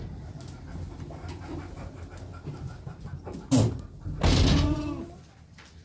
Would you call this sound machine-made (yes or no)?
no